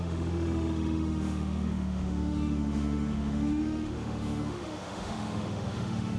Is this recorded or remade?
remade